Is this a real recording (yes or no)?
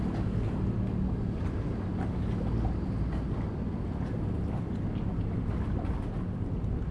yes